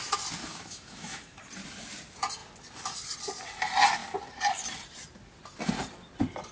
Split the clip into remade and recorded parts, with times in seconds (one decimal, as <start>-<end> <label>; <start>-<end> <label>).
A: 0.0-0.4 recorded; 0.4-1.4 remade; 1.4-6.5 recorded